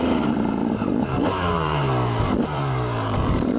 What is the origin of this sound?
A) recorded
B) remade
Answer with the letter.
B